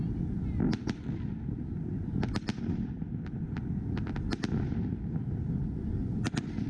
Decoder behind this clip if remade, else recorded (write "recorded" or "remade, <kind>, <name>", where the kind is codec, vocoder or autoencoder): recorded